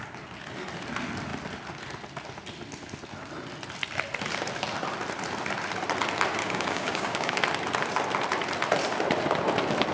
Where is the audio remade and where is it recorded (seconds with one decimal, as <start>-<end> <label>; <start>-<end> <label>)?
0.0-6.4 recorded; 6.4-7.4 remade; 7.4-9.9 recorded